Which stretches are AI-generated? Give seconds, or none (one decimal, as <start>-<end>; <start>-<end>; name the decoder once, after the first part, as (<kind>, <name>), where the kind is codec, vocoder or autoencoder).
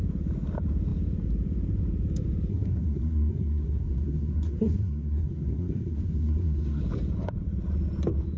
2.5-6.8 (codec, SNAC)